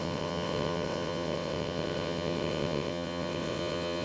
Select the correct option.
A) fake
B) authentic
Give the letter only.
A